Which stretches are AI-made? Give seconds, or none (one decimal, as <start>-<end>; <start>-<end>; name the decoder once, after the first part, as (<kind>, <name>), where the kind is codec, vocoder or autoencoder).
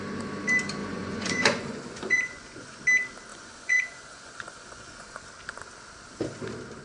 0.8-2.8 (vocoder, Vocos); 3.3-5.3